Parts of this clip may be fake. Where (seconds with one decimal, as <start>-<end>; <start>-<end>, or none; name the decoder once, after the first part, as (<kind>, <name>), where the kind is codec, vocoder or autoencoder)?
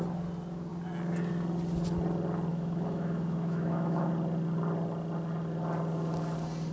2.5-4.1 (autoencoder, DAC-VAE)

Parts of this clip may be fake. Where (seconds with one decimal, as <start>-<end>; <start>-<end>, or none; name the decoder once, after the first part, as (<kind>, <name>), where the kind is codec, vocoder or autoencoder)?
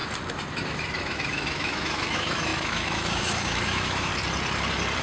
1.0-4.1 (autoencoder, DAC-VAE)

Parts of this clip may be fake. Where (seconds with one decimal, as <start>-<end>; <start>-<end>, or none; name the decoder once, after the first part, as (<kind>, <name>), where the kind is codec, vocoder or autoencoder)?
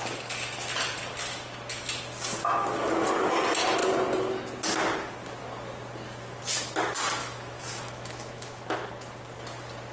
7.2-8.9 (autoencoder, DAC-VAE)